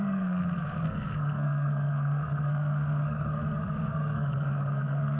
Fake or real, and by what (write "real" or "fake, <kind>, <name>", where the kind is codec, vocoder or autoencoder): fake, codec, SNAC